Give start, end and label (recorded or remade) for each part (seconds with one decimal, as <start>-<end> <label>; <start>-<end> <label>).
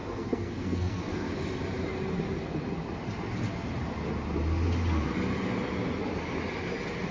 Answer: 0.0-1.0 remade; 1.0-7.1 recorded